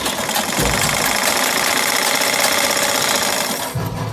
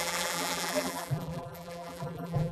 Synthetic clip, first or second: second